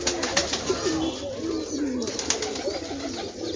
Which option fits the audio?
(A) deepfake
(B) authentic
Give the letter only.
B